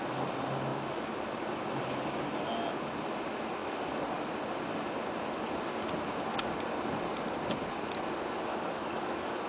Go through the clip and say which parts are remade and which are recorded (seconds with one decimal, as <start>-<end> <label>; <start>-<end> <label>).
0.0-8.5 recorded; 8.5-9.5 remade